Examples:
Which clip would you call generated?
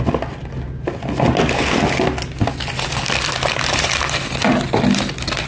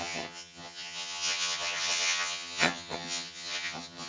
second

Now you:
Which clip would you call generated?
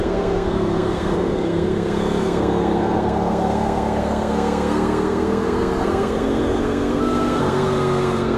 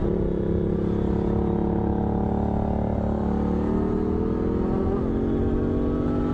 first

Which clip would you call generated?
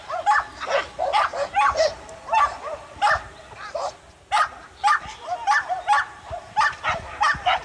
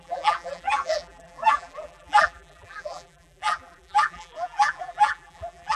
second